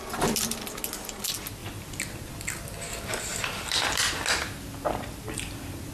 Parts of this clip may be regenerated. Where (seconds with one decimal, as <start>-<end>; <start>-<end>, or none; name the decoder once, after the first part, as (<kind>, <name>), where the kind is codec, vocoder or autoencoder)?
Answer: 3.3-4.1 (vocoder, BigVGAN v2)